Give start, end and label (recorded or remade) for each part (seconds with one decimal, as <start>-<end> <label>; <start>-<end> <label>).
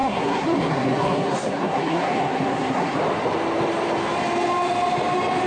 0.0-3.0 remade; 3.0-5.5 recorded